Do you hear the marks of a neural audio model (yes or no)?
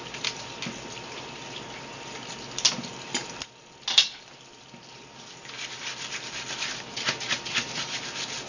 no